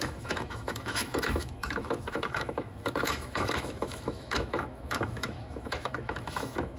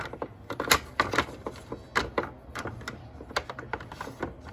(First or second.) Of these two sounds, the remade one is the first